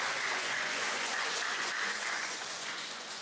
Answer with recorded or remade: remade